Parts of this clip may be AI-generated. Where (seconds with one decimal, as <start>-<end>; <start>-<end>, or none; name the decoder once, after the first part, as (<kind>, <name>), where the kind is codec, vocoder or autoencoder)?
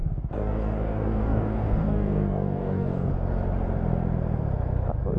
0.0-3.1 (codec, DAC)